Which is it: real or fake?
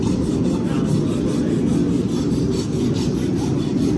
real